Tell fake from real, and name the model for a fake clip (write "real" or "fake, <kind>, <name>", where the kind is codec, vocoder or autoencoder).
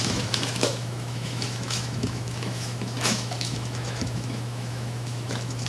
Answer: fake, autoencoder, DAC-VAE